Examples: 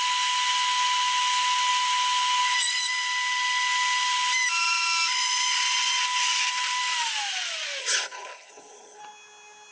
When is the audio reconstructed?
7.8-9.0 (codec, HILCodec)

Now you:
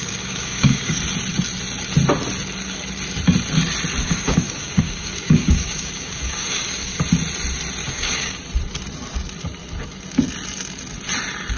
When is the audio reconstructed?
0.0-1.0 (codec, DAC); 4.0-7.0; 7.8-8.4

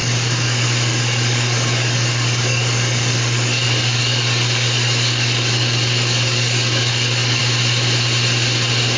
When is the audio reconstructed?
0.0-7.4 (codec, DAC)